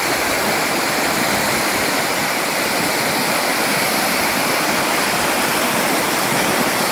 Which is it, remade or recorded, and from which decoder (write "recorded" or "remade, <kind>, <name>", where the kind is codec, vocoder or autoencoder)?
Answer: remade, vocoder, BigVGAN v2